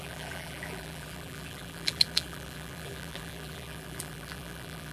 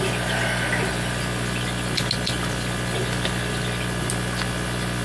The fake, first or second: first